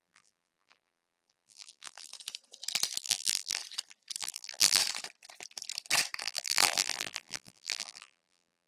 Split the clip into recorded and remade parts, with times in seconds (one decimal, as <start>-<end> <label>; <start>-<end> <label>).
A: 0.0-2.1 remade; 2.1-3.0 recorded; 3.0-3.6 remade; 3.6-4.2 recorded; 4.2-4.8 remade; 4.8-6.2 recorded; 6.2-8.7 remade